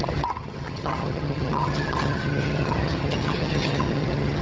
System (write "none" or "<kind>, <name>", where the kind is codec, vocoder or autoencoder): vocoder, HiFi-GAN